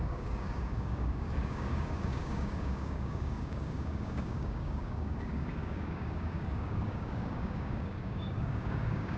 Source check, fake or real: fake